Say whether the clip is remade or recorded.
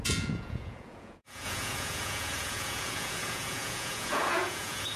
remade